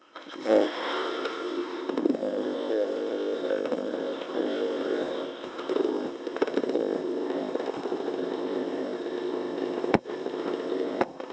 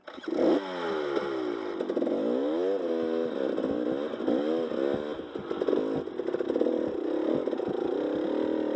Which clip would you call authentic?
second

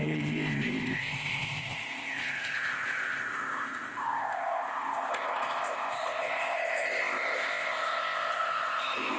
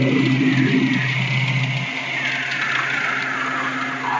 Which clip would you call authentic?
second